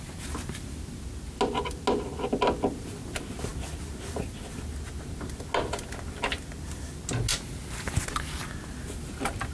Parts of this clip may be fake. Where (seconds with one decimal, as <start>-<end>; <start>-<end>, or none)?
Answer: none